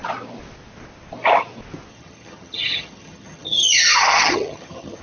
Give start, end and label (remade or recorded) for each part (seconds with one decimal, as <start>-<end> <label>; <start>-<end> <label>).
0.0-1.9 recorded; 1.9-5.0 remade